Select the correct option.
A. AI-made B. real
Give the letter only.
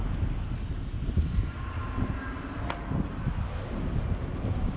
B